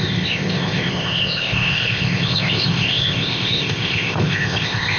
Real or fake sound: fake